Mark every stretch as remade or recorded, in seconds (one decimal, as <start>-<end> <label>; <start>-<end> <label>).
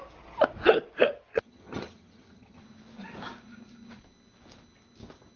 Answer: 0.0-1.3 recorded; 1.3-2.6 remade; 2.6-5.4 recorded